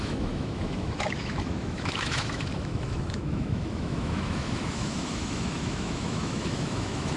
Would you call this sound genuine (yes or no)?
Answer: no